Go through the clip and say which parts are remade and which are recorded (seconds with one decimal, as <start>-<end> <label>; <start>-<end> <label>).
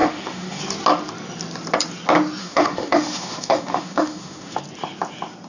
0.0-0.6 remade; 0.6-2.4 recorded; 2.4-4.6 remade; 4.6-5.5 recorded